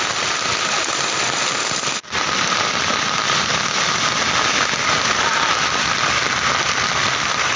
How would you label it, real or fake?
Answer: real